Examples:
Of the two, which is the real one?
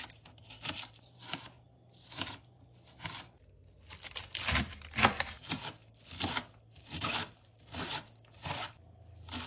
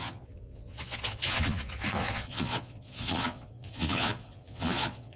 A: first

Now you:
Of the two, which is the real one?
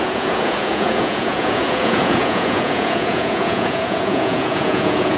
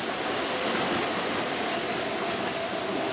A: second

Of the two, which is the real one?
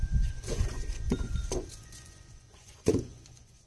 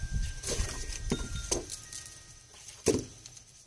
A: second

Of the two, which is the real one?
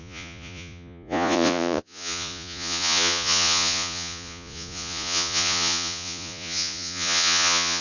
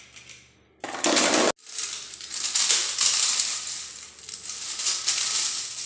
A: second